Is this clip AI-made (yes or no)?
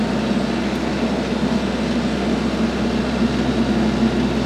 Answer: no